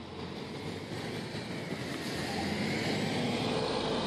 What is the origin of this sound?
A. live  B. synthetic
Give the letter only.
A